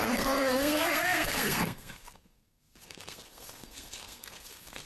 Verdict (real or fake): fake